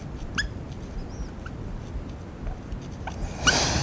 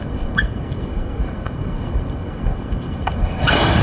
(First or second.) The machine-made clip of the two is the second